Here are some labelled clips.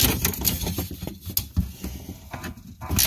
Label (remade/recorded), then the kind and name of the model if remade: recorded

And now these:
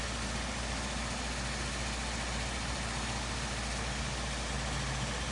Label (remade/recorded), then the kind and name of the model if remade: recorded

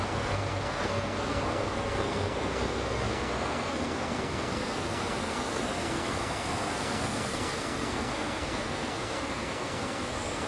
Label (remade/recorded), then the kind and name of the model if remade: remade, codec, SNAC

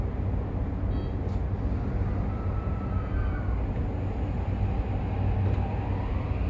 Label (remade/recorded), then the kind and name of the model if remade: recorded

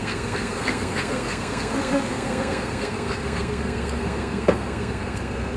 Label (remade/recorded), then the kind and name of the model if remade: remade, codec, SNAC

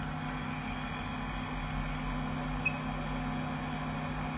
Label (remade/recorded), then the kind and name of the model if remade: recorded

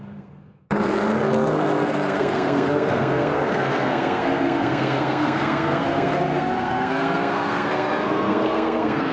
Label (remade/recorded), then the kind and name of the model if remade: remade, codec, SNAC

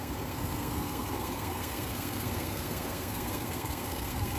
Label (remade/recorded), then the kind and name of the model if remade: remade, codec, SNAC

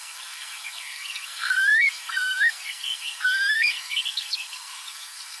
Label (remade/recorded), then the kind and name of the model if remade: remade, codec, SNAC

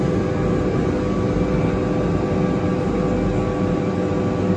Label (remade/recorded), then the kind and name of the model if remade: recorded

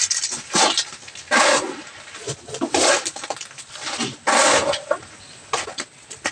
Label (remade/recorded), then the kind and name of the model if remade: recorded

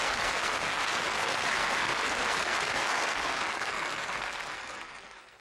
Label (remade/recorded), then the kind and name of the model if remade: remade, codec, SNAC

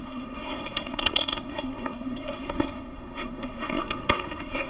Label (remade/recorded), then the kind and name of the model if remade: remade, codec, SNAC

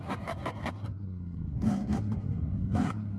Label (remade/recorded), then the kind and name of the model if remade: remade, codec, SNAC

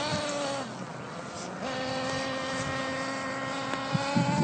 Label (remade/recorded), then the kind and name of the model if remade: recorded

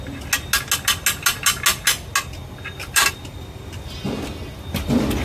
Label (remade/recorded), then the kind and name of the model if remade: recorded